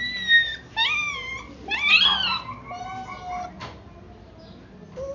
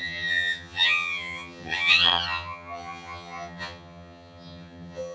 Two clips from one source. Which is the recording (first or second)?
first